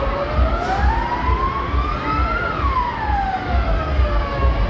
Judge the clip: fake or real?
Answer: real